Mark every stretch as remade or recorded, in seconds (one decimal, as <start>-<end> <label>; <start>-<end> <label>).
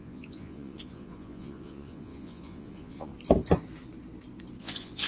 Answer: 0.0-3.1 remade; 3.1-4.6 recorded; 4.6-5.1 remade